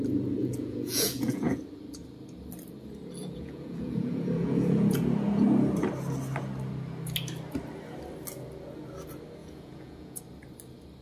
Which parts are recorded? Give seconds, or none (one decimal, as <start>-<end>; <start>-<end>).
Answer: 0.0-0.4; 1.6-3.2; 5.0-9.4; 10.2-11.0